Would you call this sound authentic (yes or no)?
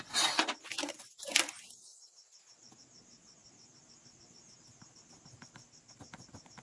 yes